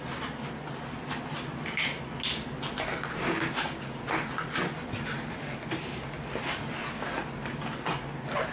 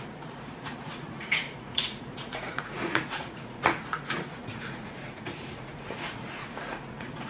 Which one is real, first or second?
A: first